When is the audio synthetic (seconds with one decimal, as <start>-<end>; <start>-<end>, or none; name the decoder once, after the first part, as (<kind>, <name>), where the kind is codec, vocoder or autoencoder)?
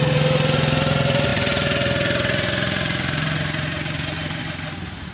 none